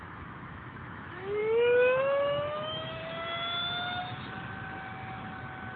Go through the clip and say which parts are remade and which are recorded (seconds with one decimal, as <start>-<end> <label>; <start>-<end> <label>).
0.0-1.4 remade; 1.4-2.0 recorded; 2.0-3.0 remade; 3.0-5.8 recorded